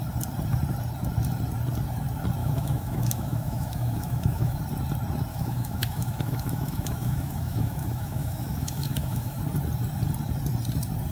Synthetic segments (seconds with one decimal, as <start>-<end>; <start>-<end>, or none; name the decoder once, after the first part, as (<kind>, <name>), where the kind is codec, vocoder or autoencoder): 2.4-4.6 (autoencoder, DAC-VAE); 5.3-9.4